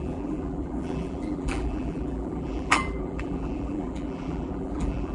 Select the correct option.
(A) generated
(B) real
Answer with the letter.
A